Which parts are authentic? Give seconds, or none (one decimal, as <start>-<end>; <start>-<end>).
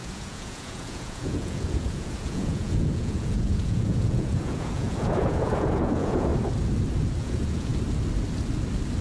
6.3-7.2; 7.7-9.0